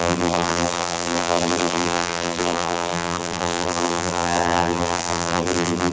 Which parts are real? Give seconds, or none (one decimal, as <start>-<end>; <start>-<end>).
none